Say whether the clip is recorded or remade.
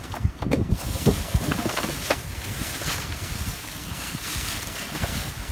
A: remade